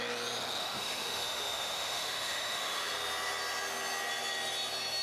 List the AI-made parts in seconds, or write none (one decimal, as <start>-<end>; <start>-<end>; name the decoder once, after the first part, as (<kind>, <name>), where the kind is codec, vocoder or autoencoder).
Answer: 0.6-2.9 (autoencoder, DAC-VAE)